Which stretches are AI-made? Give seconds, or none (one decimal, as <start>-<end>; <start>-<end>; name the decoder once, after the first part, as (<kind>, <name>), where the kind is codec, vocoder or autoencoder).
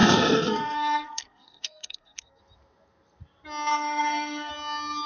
0.0-2.4 (codec, SNAC); 3.7-4.5